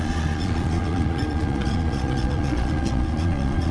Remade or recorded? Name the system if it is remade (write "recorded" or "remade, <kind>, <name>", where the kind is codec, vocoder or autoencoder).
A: remade, vocoder, Vocos